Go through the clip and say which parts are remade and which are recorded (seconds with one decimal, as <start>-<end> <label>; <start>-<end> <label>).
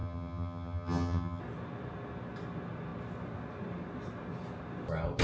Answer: 0.0-1.4 remade; 1.4-5.2 recorded